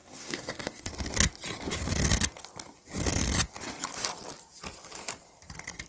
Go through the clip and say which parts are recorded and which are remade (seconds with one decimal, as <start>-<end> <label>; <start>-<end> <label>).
0.0-0.9 remade; 0.9-5.9 recorded